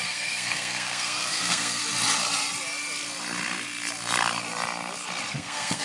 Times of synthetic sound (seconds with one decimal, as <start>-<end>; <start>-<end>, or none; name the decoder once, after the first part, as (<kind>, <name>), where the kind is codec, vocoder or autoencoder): 0.0-1.8 (codec, SNAC); 5.3-5.8